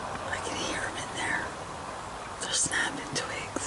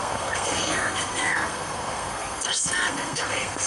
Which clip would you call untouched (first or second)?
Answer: first